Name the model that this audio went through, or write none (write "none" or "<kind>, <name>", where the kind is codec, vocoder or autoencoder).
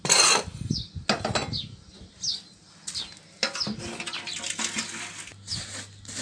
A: none